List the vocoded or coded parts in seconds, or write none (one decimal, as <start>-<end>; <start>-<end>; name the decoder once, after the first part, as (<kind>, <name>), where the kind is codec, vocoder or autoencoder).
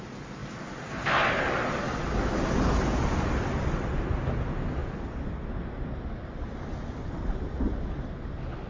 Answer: none